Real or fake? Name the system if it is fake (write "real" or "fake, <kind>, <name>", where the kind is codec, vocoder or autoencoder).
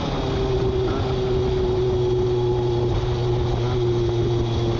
real